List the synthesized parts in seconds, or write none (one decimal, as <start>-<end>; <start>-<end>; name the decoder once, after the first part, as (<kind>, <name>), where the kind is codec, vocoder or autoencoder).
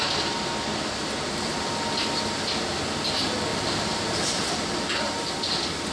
3.5-5.4 (vocoder, BigVGAN v2)